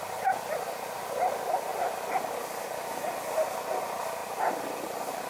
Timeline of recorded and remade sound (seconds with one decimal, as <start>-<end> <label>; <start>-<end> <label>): 0.0-4.2 recorded; 4.2-5.3 remade